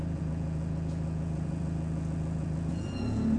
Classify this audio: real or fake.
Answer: fake